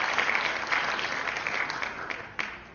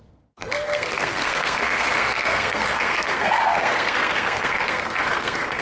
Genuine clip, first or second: first